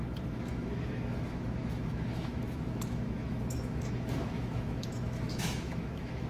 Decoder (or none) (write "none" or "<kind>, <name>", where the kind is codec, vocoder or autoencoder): autoencoder, DAC-VAE